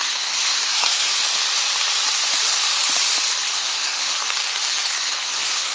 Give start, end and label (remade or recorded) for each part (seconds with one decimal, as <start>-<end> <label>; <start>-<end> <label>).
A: 0.0-1.1 remade; 1.1-3.4 recorded; 3.4-4.2 remade; 4.2-4.8 recorded; 4.8-5.7 remade